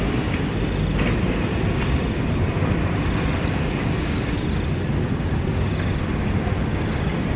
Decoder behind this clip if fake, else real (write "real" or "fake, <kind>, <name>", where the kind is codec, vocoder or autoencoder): real